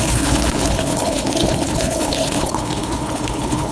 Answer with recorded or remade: remade